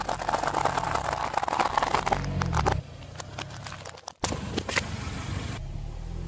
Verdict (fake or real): real